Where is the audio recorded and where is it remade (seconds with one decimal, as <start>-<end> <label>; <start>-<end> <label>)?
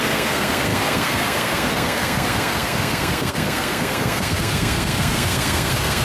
0.0-6.0 remade